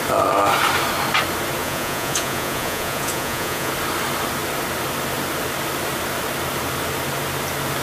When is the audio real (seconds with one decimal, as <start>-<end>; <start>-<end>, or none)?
0.0-1.6; 3.7-7.8